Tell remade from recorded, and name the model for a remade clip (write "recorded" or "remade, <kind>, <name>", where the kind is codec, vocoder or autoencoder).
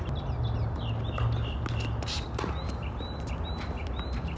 recorded